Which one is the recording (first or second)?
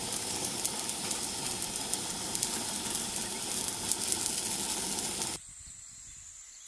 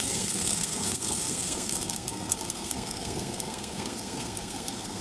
first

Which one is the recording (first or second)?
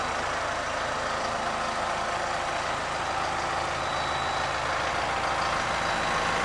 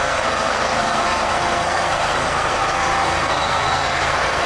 first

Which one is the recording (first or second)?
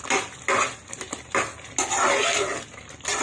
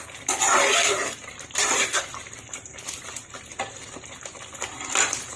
first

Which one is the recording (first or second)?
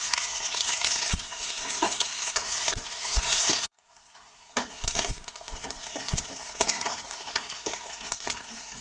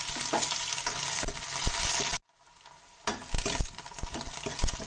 second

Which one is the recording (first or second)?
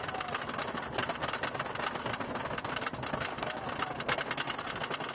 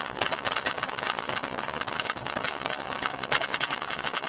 first